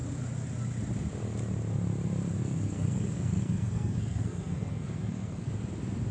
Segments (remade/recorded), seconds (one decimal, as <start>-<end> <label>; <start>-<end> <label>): 0.0-2.4 recorded; 2.4-5.5 remade; 5.5-6.1 recorded